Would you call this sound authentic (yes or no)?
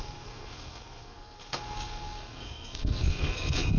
no